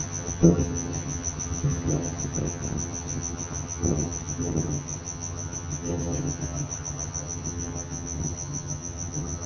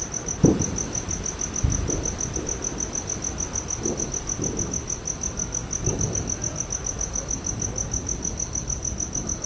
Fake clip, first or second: first